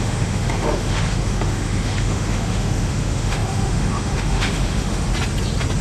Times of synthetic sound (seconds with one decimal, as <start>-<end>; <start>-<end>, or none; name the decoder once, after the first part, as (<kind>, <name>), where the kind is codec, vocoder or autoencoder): 0.0-5.1 (autoencoder, DAC-VAE)